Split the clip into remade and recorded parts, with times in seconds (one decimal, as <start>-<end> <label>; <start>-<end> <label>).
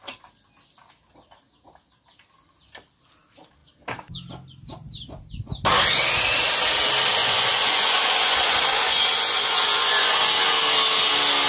0.0-7.2 recorded; 7.2-10.3 remade; 10.3-11.5 recorded